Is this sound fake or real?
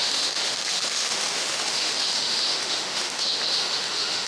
fake